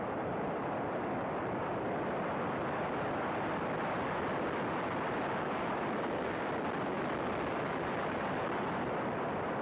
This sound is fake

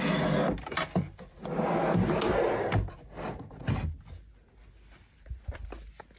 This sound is real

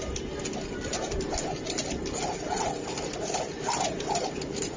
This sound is real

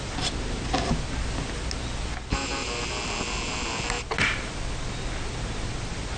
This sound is real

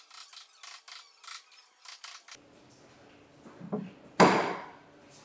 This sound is real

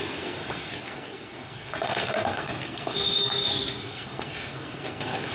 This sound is fake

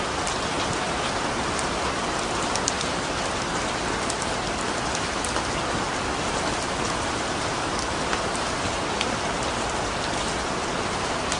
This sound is real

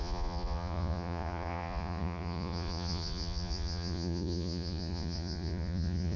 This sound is fake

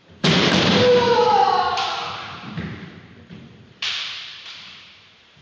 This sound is fake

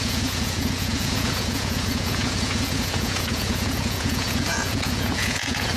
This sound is fake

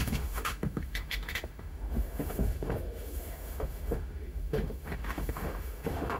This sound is fake